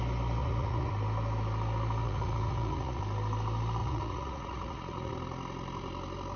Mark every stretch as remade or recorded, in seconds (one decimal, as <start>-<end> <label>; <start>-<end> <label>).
0.0-0.4 recorded; 0.4-0.9 remade; 0.9-2.0 recorded; 2.0-3.0 remade; 3.0-3.8 recorded; 3.8-5.1 remade; 5.1-6.4 recorded